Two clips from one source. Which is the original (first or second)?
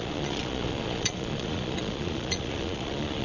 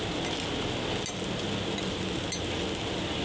second